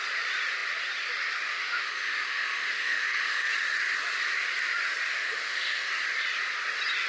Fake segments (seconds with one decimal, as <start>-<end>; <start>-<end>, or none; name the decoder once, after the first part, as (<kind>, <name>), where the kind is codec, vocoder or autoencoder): 1.5-3.5 (autoencoder, DAC-VAE); 5.1-5.9